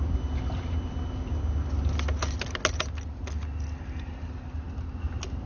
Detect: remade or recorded recorded